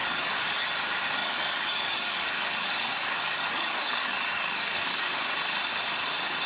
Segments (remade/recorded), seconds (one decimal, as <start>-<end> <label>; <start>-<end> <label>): 0.0-0.5 remade; 0.5-1.2 recorded; 1.2-5.1 remade; 5.1-6.5 recorded

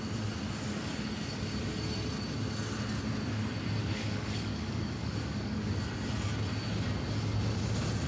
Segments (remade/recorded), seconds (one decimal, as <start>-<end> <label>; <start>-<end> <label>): 0.0-3.8 recorded; 3.8-5.7 remade; 5.7-8.1 recorded

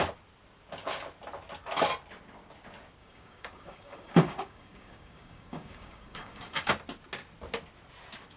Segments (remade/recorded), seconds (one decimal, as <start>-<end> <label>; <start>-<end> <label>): 0.0-3.0 recorded; 3.0-6.7 remade; 6.7-8.4 recorded

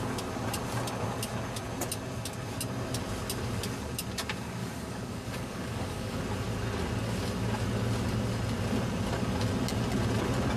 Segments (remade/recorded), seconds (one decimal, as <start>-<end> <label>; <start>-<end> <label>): 0.0-4.6 recorded; 4.6-6.2 remade; 6.2-10.6 recorded